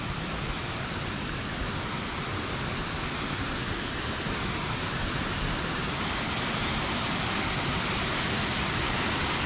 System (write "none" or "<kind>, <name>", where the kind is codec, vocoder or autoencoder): none